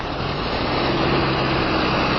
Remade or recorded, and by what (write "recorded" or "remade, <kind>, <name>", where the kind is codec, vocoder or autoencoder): recorded